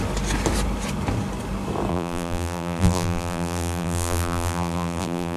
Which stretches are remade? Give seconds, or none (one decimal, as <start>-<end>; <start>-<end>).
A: 1.9-5.4